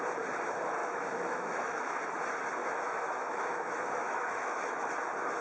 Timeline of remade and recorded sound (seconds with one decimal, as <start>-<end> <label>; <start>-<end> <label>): 0.0-0.8 recorded; 0.8-1.9 remade; 1.9-2.6 recorded; 2.6-4.9 remade; 4.9-5.4 recorded